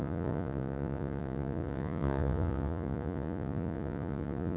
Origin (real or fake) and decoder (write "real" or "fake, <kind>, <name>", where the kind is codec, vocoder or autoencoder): fake, vocoder, Vocos